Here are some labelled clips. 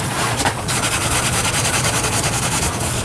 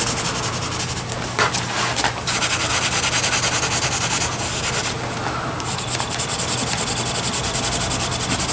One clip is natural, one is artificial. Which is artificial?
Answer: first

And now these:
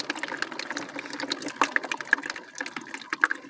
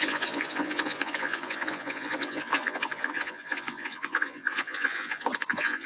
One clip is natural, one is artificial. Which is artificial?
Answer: second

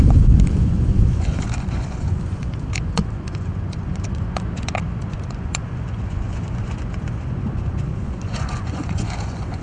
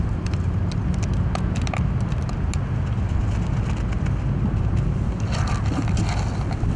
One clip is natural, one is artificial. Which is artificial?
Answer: first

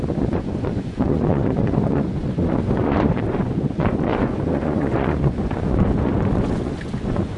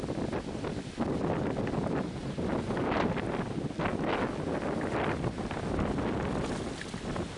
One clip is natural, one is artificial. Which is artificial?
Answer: first